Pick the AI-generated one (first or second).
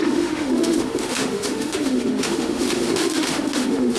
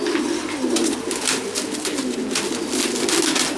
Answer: first